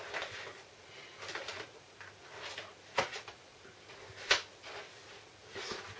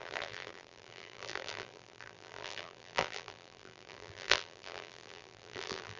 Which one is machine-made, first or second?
second